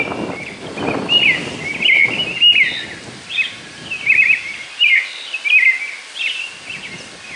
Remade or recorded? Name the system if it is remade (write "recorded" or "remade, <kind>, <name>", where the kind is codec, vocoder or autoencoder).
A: recorded